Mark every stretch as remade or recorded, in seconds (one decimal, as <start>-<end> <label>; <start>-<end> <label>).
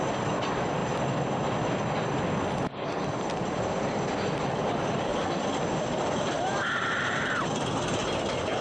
0.0-8.6 recorded